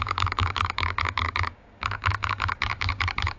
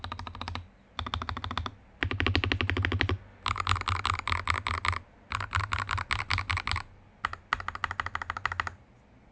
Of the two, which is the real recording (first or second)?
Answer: second